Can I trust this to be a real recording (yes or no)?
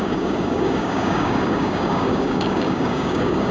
no